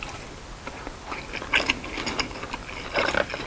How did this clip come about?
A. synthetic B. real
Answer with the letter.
B